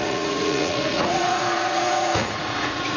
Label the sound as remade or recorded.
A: remade